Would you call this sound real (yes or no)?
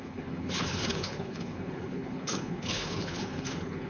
no